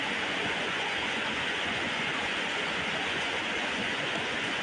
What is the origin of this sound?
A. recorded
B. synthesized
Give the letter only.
B